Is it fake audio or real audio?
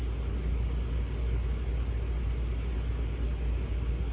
real